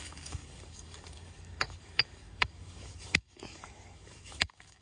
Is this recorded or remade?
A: remade